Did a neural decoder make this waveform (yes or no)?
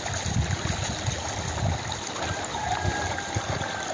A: no